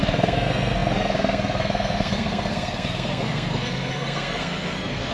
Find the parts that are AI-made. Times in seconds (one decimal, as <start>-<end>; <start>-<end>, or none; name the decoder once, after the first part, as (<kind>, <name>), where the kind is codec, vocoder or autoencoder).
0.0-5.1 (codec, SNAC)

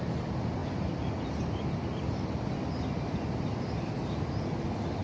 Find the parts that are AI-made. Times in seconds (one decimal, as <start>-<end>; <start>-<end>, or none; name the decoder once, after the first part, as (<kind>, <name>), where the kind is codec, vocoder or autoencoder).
none

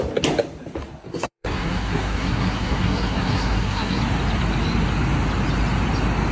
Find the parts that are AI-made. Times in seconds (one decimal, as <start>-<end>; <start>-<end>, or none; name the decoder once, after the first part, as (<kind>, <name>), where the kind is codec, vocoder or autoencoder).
1.1-4.0 (codec, SNAC)